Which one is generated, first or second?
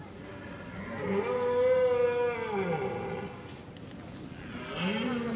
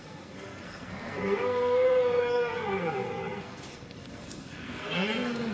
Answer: second